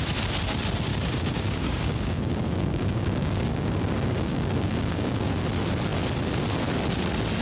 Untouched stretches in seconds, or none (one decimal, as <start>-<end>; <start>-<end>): 0.0-0.9; 5.3-7.4